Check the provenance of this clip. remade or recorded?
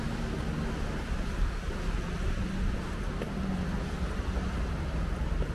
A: recorded